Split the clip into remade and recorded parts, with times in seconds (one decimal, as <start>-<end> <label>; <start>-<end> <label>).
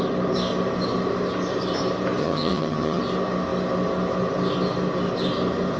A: 0.0-2.2 recorded; 2.2-3.0 remade; 3.0-5.8 recorded